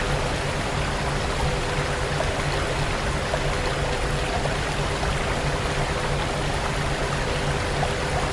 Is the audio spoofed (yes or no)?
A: no